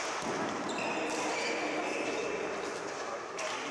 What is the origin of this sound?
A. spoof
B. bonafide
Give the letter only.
B